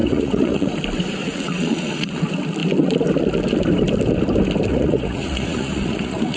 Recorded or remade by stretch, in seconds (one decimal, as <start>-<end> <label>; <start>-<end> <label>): 0.0-0.7 remade; 0.7-1.2 recorded; 1.2-2.2 remade; 2.2-4.7 recorded; 4.7-6.4 remade